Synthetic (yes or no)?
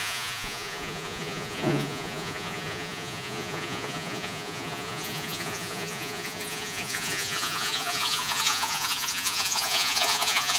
yes